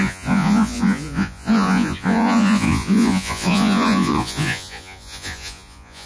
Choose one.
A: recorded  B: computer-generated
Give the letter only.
B